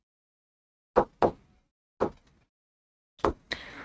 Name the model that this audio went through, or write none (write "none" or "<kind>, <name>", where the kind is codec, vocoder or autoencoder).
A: none